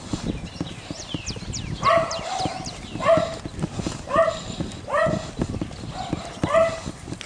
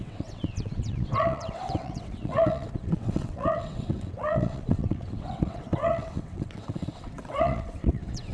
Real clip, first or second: first